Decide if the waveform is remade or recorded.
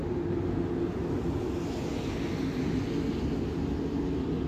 recorded